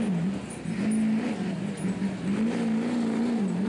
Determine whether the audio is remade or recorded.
recorded